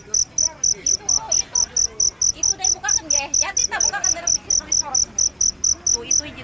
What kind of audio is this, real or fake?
real